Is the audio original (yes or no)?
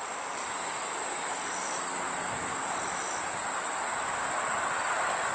yes